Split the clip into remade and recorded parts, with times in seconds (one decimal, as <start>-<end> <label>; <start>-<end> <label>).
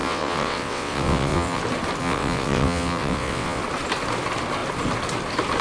0.0-1.6 remade; 1.6-2.0 recorded; 2.0-3.6 remade; 3.6-5.6 recorded